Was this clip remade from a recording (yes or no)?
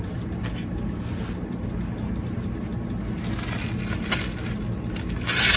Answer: no